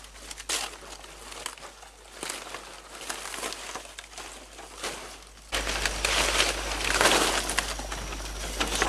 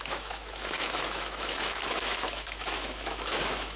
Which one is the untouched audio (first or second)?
first